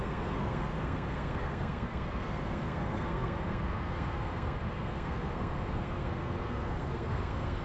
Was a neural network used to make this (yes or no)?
yes